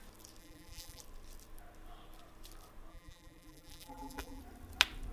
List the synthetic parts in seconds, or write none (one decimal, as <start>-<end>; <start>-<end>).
0.4-1.0; 2.9-4.4